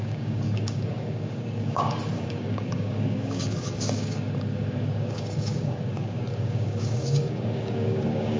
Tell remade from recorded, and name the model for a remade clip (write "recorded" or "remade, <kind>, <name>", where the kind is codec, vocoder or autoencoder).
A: remade, codec, DAC